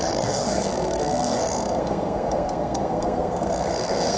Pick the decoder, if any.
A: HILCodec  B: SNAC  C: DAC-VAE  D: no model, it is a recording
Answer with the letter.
B